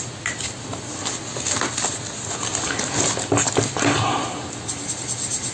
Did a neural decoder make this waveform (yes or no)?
no